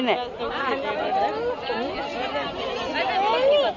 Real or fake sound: real